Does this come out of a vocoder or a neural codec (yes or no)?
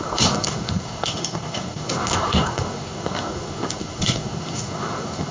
yes